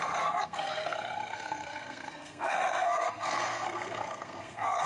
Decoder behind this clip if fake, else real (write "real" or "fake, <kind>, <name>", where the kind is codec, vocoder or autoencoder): fake, codec, SNAC